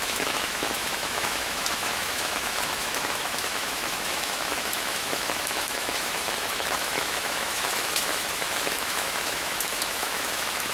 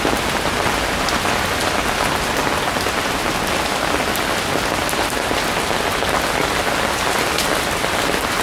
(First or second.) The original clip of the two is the second